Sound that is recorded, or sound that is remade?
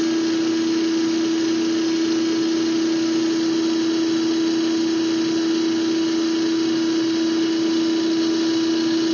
recorded